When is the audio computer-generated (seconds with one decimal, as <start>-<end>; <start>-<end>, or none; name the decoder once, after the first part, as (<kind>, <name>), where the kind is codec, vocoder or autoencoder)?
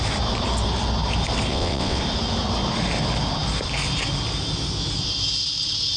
1.5-2.0 (vocoder, WaveNeXt)